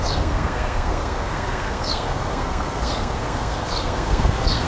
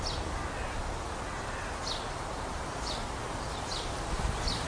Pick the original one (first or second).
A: second